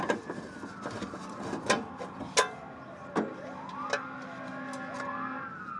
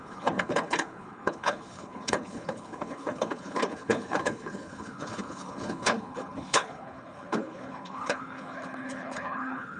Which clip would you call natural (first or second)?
first